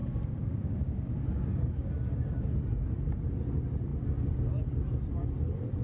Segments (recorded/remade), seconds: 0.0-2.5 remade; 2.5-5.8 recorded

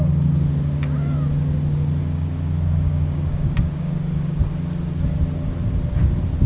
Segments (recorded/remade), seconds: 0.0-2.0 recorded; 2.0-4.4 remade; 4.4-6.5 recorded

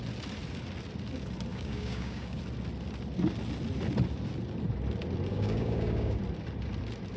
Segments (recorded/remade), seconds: 0.0-1.5 recorded; 1.5-2.4 remade; 2.4-5.3 recorded; 5.3-6.2 remade; 6.2-7.2 recorded